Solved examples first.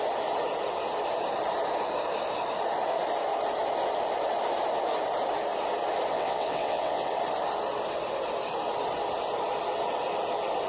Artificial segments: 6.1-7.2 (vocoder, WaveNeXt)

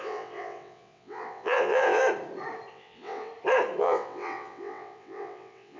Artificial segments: 0.0-2.0 (vocoder, WaveNeXt); 2.7-3.3; 3.8-5.8

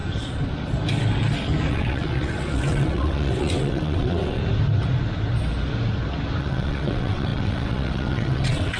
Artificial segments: 1.7-4.4 (vocoder, WaveNeXt); 6.4-8.8